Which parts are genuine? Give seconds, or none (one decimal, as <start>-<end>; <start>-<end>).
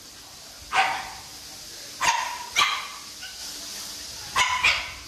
0.0-5.1